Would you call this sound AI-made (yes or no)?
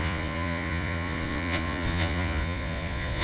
yes